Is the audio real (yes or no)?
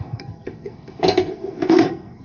no